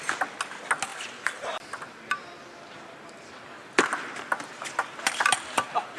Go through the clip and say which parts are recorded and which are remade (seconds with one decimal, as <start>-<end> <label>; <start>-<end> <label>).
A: 0.0-6.0 recorded